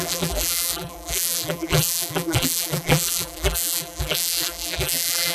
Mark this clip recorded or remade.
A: remade